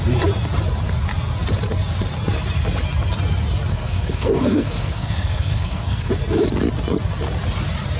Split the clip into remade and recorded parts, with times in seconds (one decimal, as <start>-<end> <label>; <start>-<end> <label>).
0.0-3.7 recorded; 3.7-6.1 remade; 6.1-8.0 recorded

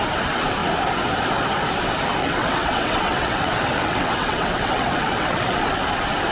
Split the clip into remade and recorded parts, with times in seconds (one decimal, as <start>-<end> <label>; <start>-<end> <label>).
0.0-2.2 recorded; 2.2-5.6 remade; 5.6-6.3 recorded

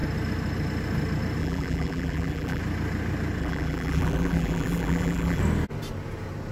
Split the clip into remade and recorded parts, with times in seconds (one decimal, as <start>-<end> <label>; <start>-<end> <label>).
0.0-1.4 recorded; 1.4-2.6 remade; 2.6-3.4 recorded; 3.4-5.4 remade; 5.4-6.5 recorded

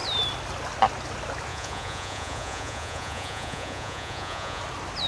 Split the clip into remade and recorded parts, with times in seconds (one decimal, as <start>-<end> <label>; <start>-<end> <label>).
0.0-1.5 recorded; 1.5-4.6 remade; 4.6-5.1 recorded

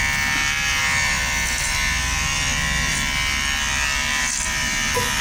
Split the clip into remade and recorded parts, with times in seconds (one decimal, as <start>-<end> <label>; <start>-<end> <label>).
0.0-5.2 recorded

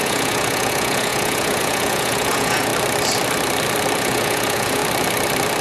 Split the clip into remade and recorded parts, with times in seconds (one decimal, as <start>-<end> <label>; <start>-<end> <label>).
0.0-2.7 remade; 2.7-4.0 recorded; 4.0-4.8 remade; 4.8-5.6 recorded

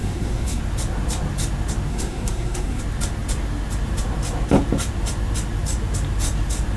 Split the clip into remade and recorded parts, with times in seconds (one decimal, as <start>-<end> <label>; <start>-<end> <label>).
0.0-0.6 remade; 0.6-1.9 recorded; 1.9-2.8 remade; 2.8-6.8 recorded

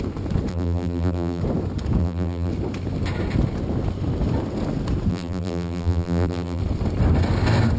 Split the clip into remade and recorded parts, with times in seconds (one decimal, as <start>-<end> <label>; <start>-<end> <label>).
0.0-0.5 recorded; 0.5-1.4 remade; 1.4-2.0 recorded; 2.0-2.5 remade; 2.5-5.1 recorded; 5.1-6.6 remade; 6.6-7.8 recorded